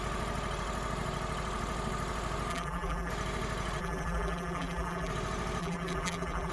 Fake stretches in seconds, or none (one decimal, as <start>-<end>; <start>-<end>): 2.5-3.1; 3.8-5.1; 5.6-6.5